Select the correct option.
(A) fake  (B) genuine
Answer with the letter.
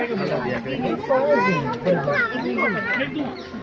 B